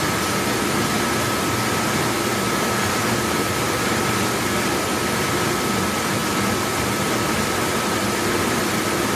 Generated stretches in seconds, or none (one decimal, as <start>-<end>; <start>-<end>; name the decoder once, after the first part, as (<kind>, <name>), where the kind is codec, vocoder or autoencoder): 6.2-7.1 (vocoder, BigVGAN v2)